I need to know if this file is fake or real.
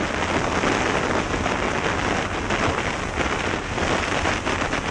real